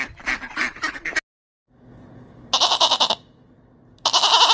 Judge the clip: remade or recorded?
recorded